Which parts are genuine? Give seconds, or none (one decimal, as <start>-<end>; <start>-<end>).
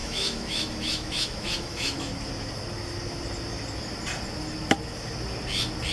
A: 2.1-5.9